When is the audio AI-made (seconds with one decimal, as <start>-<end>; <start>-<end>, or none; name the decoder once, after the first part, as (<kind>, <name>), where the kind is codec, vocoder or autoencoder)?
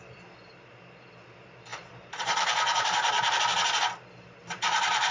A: 1.7-3.4 (vocoder, BigVGAN v2); 4.4-5.1